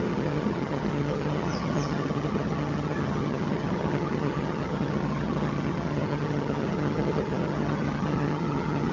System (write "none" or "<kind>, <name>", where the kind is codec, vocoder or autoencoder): vocoder, HiFi-GAN